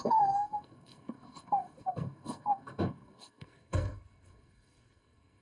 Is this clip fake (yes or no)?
yes